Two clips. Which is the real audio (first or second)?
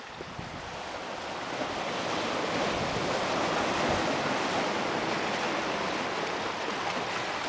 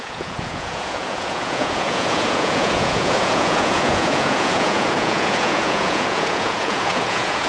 first